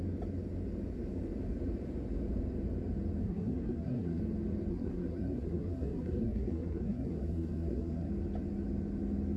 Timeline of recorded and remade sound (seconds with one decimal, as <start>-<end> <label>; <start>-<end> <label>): 0.0-3.2 recorded; 3.2-4.2 remade; 4.2-4.7 recorded; 4.7-8.1 remade; 8.1-9.4 recorded